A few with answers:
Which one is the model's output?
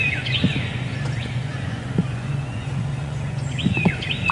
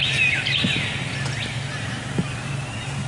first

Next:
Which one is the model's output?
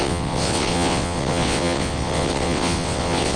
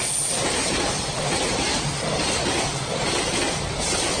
first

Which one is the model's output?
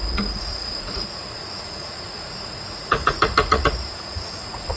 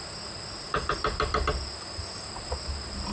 first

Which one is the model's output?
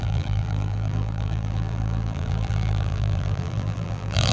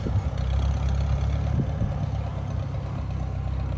first